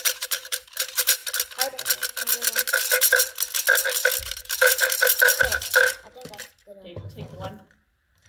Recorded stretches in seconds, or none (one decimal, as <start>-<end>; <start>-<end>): 1.2-2.7; 3.2-4.2